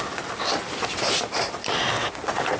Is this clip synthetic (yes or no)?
no